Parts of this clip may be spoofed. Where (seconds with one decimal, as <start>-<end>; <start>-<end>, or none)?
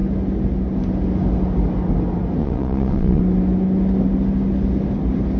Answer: 2.4-3.2